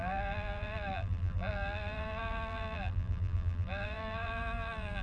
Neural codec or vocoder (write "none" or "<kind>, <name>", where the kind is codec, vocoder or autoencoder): vocoder, BigVGAN v2